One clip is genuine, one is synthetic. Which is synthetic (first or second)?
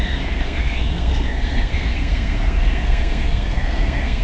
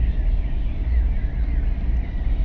first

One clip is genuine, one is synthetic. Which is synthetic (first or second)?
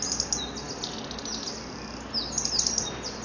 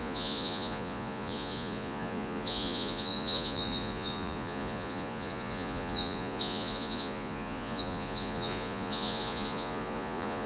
second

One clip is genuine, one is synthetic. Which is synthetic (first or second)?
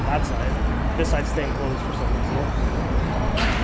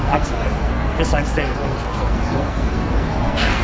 second